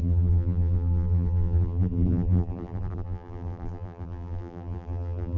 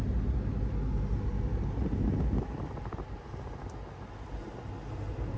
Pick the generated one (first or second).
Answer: first